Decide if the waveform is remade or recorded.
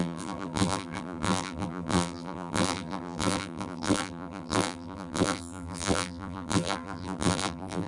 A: remade